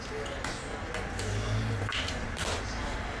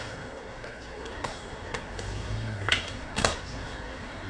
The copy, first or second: second